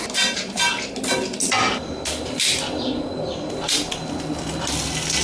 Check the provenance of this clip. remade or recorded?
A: recorded